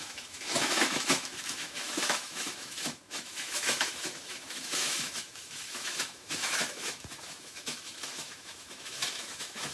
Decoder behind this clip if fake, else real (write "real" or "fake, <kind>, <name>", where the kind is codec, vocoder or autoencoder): fake, autoencoder, DAC-VAE